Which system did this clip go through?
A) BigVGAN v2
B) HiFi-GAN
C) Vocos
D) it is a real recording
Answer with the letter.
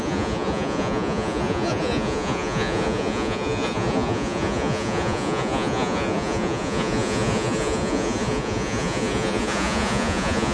C